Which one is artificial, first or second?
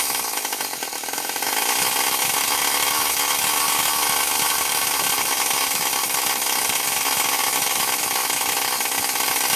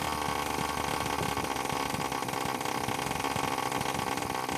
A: first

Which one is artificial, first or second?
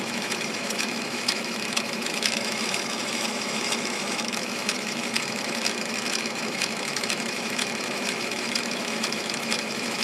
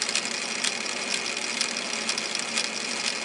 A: first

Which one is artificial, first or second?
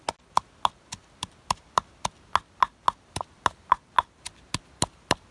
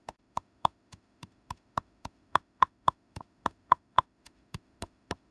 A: second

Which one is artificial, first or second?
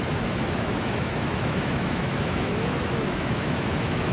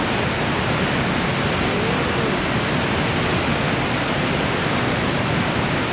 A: first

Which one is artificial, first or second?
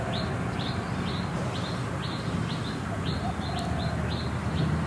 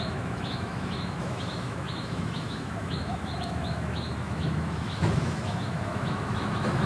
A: second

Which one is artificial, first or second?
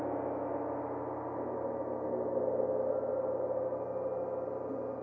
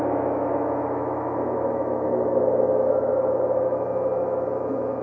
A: second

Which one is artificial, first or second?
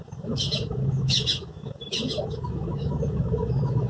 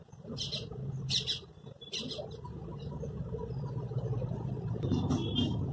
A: first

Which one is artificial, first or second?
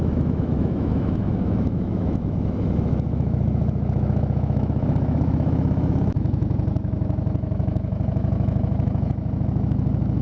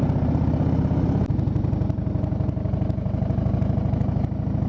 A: first